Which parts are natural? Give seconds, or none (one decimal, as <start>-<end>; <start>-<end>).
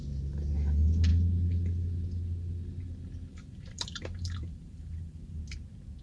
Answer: 0.0-3.3; 5.4-6.0